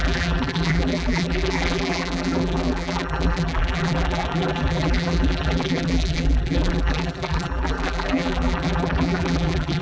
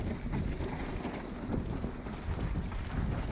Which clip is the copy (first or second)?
first